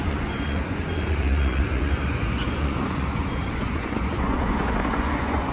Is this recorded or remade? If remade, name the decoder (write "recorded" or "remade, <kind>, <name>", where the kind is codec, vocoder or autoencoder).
remade, vocoder, Vocos